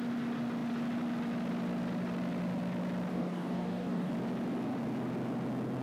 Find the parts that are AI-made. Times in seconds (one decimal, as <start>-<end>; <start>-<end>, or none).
3.1-4.1